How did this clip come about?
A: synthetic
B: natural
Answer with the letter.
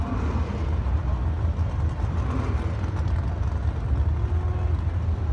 B